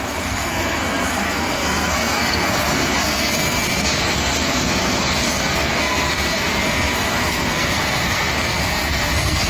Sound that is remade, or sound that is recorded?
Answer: remade